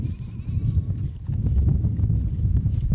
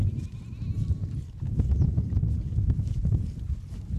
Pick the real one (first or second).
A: second